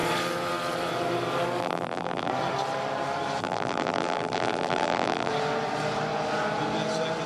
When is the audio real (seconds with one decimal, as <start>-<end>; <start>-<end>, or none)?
0.0-1.6; 2.3-3.4; 5.3-7.3